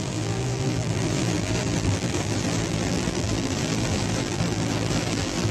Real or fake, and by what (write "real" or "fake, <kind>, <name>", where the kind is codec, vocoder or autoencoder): fake, vocoder, BigVGAN v2